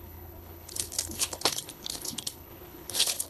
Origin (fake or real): fake